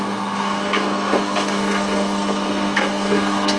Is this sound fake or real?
fake